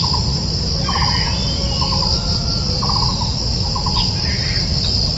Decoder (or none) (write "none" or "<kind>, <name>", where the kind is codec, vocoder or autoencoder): none